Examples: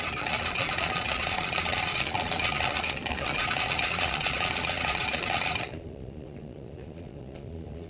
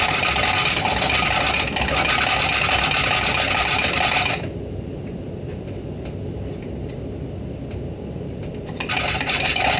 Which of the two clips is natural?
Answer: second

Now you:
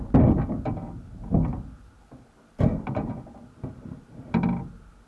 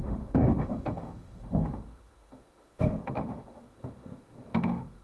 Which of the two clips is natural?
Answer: first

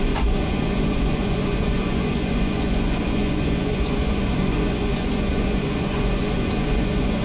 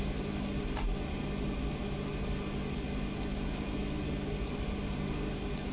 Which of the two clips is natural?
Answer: second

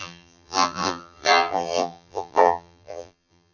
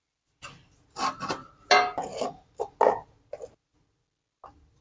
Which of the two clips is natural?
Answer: second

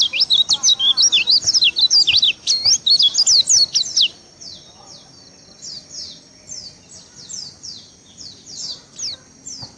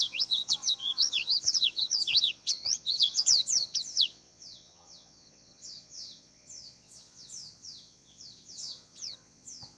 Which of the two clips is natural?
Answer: first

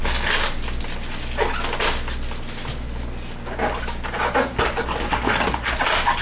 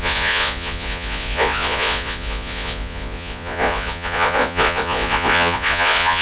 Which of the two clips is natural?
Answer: first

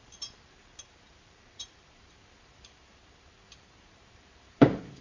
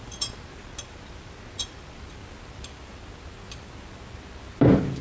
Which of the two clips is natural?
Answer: second